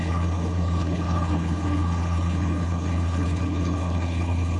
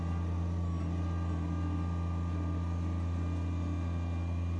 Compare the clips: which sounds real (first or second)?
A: second